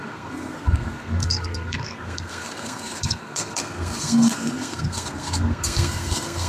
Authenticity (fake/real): fake